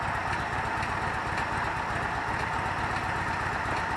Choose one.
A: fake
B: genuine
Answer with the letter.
B